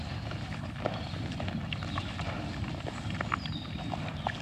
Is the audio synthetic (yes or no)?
no